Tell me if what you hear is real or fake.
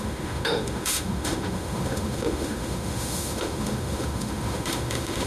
fake